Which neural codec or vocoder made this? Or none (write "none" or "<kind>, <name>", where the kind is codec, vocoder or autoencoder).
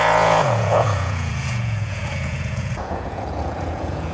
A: vocoder, Vocos